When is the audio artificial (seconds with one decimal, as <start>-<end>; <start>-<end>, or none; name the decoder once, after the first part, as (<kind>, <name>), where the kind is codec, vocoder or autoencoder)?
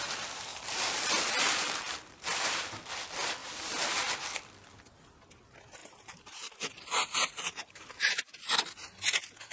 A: 0.5-2.9 (vocoder, BigVGAN v2); 3.4-4.2; 5.8-8.1